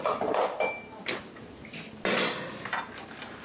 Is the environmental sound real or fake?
real